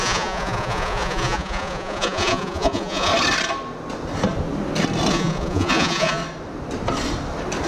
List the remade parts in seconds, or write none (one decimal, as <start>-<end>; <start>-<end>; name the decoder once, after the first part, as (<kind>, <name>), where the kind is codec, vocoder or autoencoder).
0.0-3.1 (vocoder, Vocos); 5.1-6.2

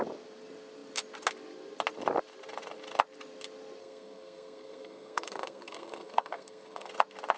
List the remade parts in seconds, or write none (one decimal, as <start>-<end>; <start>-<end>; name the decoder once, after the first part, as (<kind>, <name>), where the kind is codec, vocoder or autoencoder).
3.8-6.9 (codec, SNAC)